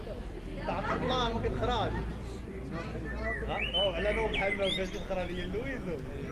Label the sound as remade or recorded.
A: recorded